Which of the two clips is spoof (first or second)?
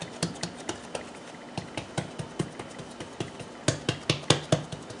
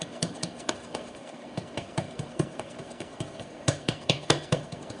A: second